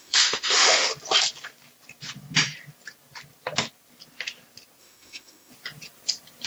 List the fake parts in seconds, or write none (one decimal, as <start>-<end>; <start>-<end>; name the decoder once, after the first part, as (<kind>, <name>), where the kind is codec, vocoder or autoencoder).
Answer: 0.0-0.9 (autoencoder, DAC-VAE); 4.8-5.5